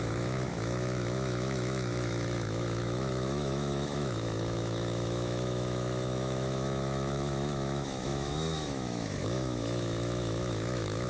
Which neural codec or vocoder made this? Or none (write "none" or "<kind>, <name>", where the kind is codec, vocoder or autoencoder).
autoencoder, DAC-VAE